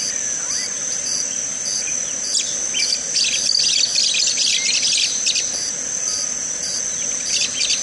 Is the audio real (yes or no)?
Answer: yes